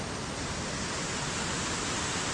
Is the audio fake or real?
real